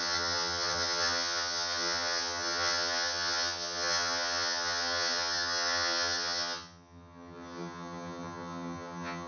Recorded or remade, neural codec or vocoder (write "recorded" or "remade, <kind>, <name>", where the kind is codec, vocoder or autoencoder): remade, vocoder, HiFi-GAN